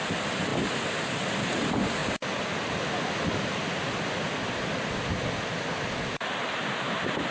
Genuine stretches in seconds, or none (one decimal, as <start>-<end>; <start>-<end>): 0.0-7.3